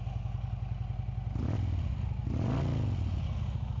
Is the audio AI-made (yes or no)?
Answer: no